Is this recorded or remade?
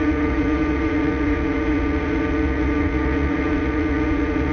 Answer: remade